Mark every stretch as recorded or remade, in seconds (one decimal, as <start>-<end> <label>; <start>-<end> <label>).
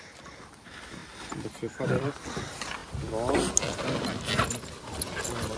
0.0-1.0 recorded; 1.0-2.1 remade; 2.1-5.6 recorded